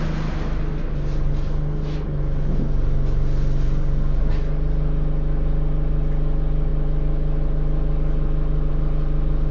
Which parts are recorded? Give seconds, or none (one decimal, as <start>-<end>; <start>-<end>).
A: 0.0-9.5